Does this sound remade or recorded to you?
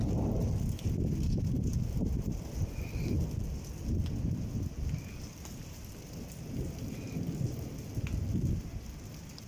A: recorded